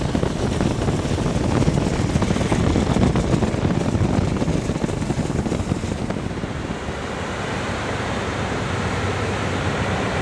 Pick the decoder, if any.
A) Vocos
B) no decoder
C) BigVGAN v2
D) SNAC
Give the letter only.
B